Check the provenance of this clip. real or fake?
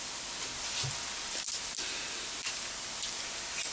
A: real